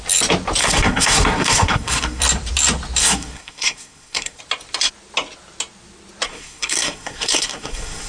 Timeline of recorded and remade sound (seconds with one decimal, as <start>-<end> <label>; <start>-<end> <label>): 0.0-0.6 recorded; 0.6-2.2 remade; 2.2-3.0 recorded; 3.0-4.4 remade; 4.4-6.3 recorded; 6.3-8.1 remade